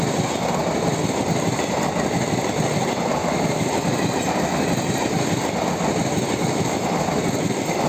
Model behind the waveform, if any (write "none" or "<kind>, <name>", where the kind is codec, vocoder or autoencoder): none